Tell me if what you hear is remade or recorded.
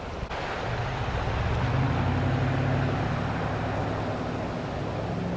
recorded